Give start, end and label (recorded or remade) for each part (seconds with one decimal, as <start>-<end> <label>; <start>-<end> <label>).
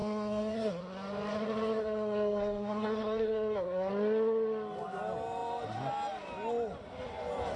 0.0-0.8 remade; 0.8-1.8 recorded; 1.8-3.9 remade; 3.9-7.6 recorded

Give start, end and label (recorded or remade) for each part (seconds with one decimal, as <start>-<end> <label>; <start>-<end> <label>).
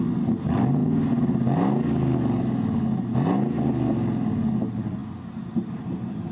0.0-6.3 recorded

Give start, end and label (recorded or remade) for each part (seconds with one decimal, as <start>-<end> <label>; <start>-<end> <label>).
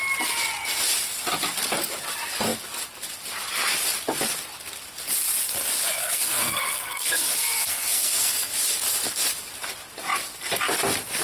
0.0-6.0 recorded; 6.0-8.5 remade; 8.5-11.2 recorded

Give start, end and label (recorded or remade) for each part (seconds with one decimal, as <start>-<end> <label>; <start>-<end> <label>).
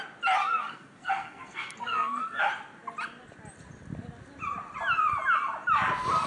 0.0-0.4 recorded; 0.4-2.4 remade; 2.4-6.3 recorded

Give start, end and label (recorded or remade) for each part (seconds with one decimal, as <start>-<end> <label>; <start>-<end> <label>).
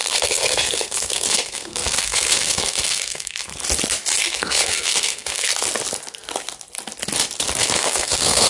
0.0-3.5 remade; 3.5-4.2 recorded; 4.2-5.5 remade; 5.5-7.6 recorded; 7.6-8.5 remade